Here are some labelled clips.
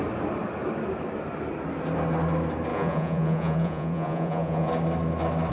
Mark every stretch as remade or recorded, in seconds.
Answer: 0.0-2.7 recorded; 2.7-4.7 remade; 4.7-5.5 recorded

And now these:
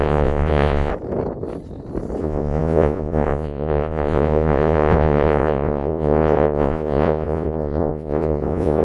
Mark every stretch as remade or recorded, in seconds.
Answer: 0.0-0.9 remade; 0.9-2.2 recorded; 2.2-8.8 remade